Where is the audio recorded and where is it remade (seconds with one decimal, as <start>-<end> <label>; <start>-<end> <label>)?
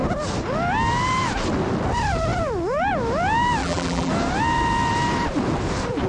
0.0-3.6 recorded; 3.6-4.1 remade; 4.1-6.1 recorded